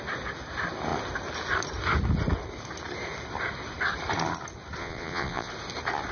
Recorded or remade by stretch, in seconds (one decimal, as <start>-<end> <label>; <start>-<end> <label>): 0.0-4.8 recorded; 4.8-5.5 remade; 5.5-6.1 recorded